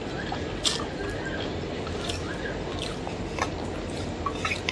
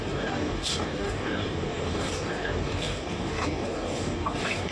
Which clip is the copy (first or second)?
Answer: second